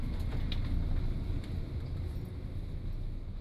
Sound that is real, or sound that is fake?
real